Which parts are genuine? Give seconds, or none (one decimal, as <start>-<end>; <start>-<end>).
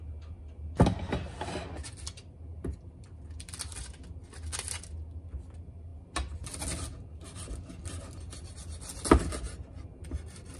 0.0-10.6